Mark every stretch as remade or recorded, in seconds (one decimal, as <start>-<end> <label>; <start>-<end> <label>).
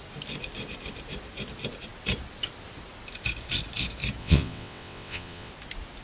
0.0-4.2 recorded; 4.2-5.5 remade; 5.5-6.0 recorded